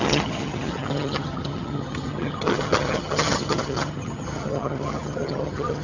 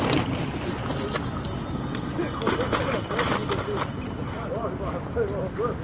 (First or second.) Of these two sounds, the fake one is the first